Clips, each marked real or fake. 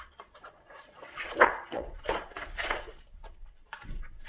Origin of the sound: fake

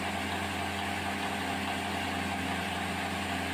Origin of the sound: real